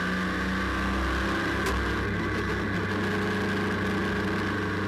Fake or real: real